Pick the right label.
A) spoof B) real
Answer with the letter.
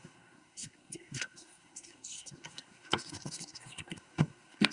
A